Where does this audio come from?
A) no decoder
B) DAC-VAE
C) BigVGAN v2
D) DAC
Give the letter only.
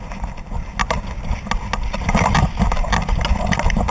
A